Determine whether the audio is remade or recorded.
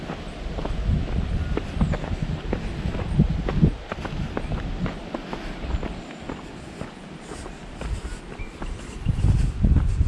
recorded